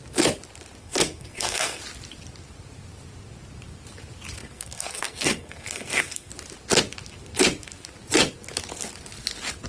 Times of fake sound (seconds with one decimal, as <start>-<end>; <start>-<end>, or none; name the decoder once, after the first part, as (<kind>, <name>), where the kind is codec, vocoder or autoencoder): 0.8-1.8 (codec, SNAC); 4.4-6.3